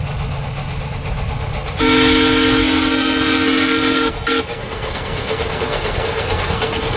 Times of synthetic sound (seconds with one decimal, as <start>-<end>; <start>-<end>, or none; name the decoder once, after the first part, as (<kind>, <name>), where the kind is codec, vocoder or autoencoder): 2.6-7.0 (codec, SNAC)